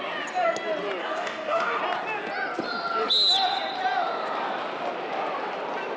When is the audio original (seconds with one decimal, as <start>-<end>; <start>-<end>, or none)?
0.0-1.0; 1.8-6.0